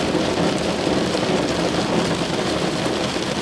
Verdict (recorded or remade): remade